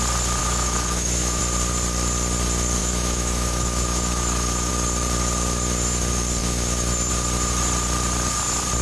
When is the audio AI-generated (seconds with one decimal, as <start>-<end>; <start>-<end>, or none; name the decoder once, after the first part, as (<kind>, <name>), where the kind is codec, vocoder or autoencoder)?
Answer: 0.4-1.4 (autoencoder, DAC-VAE); 2.8-4.7; 6.4-7.1